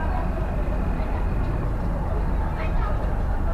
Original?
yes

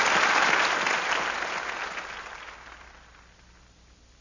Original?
yes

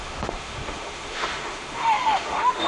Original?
no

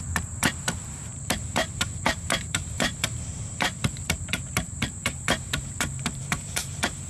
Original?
no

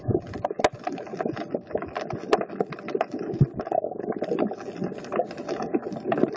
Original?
yes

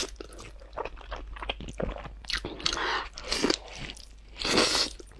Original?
yes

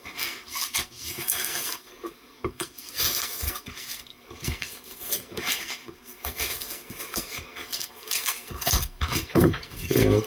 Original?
no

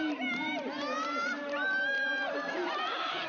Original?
no